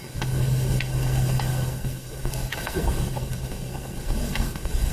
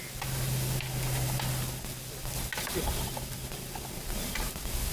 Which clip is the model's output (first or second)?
first